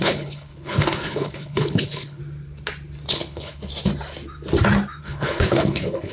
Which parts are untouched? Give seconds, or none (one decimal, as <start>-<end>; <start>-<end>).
2.2-3.1; 3.7-5.0